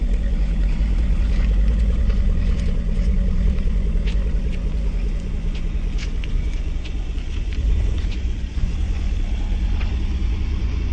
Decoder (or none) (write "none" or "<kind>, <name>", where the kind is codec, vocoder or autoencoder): vocoder, Vocos